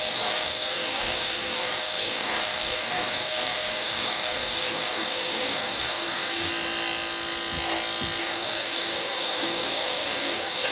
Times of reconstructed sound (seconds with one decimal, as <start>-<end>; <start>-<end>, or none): 0.0-6.5; 8.2-10.7